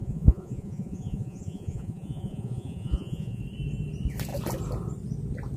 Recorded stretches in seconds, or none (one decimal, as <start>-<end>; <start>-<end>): 3.4-5.6